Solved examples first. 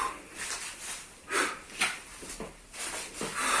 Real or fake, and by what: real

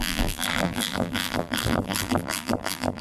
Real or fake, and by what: fake, vocoder, BigVGAN v2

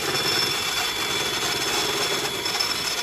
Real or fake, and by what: real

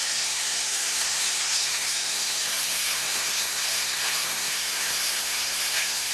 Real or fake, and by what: fake, codec, SNAC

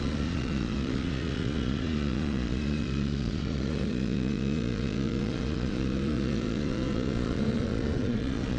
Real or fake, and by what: fake, vocoder, Vocos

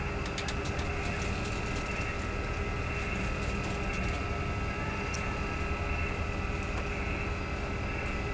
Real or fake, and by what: real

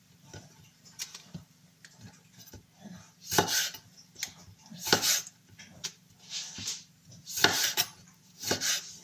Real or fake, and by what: fake, vocoder, BigVGAN v2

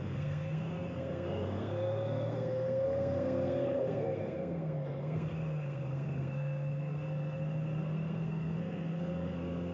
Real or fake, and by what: fake, codec, SNAC